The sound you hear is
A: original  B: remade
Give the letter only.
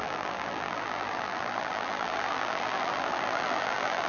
B